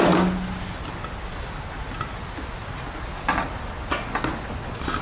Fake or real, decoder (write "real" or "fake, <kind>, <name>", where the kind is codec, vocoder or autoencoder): real